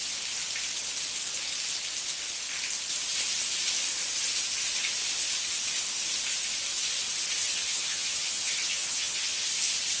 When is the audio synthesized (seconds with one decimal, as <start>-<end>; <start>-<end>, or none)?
7.4-9.5